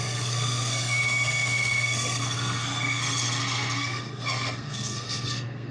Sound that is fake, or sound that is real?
fake